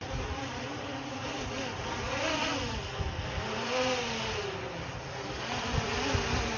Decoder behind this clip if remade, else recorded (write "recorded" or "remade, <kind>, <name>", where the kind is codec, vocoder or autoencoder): recorded